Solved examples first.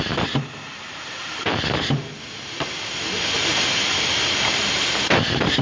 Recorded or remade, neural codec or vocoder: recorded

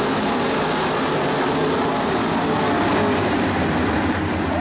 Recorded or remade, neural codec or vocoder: recorded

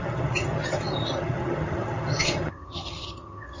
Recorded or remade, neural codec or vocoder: remade, vocoder, HiFi-GAN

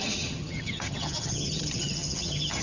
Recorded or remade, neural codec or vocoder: remade, vocoder, HiFi-GAN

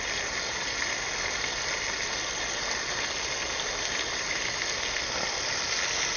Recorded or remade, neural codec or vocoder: recorded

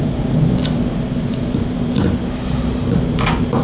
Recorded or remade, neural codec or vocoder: recorded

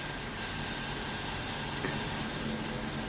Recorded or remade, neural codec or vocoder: recorded